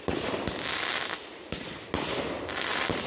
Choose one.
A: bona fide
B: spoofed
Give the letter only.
A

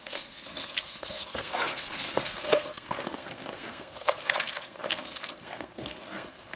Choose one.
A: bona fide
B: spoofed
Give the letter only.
B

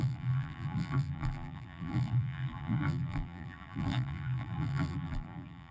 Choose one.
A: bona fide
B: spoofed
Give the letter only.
B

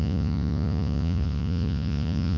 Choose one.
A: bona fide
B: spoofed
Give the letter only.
B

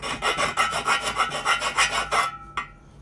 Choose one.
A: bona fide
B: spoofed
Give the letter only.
A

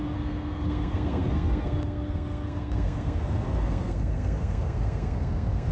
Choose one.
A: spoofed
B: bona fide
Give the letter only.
A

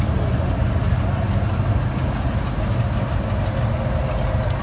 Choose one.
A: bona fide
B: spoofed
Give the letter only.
A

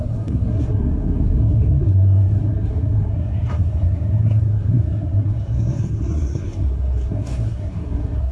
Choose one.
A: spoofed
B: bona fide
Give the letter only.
A